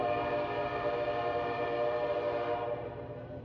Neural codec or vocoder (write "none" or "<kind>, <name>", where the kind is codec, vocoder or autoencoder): vocoder, BigVGAN v2